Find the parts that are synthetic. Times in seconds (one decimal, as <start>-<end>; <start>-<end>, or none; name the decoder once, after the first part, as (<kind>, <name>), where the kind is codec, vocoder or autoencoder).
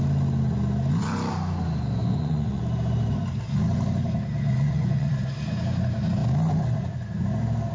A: 2.0-2.6 (vocoder, Vocos); 4.5-5.1